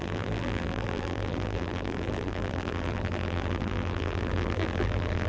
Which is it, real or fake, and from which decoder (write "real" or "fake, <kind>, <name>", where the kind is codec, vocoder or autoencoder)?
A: fake, vocoder, BigVGAN v2